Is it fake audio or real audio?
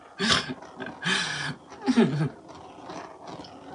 real